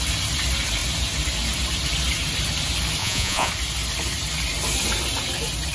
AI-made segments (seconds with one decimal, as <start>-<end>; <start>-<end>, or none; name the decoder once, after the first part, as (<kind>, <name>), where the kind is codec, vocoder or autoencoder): 3.0-3.5 (vocoder, Vocos)